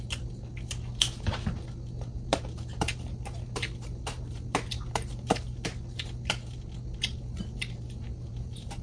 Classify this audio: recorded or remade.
recorded